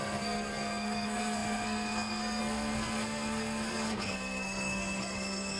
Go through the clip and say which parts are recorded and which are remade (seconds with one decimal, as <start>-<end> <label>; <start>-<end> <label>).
0.0-5.6 remade